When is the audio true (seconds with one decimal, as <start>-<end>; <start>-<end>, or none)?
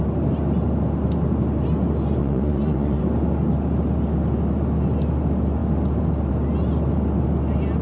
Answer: 0.0-2.2; 3.0-7.8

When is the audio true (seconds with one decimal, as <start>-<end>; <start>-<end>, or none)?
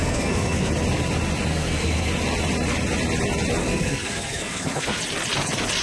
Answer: 0.7-1.5; 2.1-3.6; 5.0-5.8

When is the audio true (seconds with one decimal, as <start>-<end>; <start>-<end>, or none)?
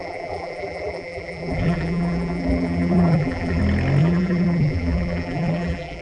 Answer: 3.6-4.0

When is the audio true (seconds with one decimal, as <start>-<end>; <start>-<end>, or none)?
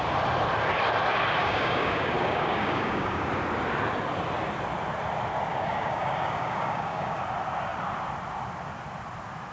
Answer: 0.0-1.4; 3.3-5.5; 7.2-9.5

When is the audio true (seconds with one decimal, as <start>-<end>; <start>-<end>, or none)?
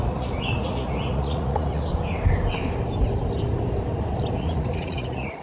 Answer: 1.9-4.4